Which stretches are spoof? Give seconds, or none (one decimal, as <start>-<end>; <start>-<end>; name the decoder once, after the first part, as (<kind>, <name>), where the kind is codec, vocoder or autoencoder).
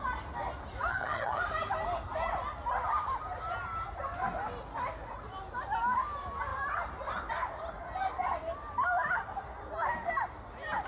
0.9-1.4 (vocoder, HiFi-GAN)